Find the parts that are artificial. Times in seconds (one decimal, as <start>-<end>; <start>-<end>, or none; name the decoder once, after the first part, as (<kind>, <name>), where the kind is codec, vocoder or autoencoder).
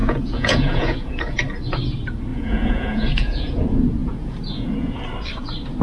0.0-1.4 (vocoder, Vocos); 2.3-3.6; 4.0-5.0